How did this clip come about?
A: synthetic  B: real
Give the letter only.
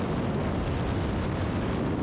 B